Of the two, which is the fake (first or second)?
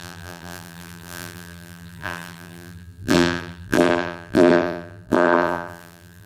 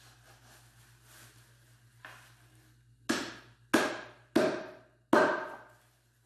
first